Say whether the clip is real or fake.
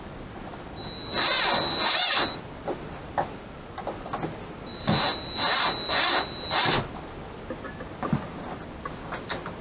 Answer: real